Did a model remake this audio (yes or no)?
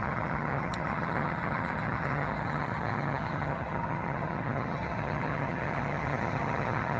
yes